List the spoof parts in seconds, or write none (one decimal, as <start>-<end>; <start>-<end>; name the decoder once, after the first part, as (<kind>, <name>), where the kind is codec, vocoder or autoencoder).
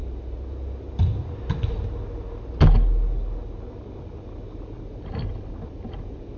none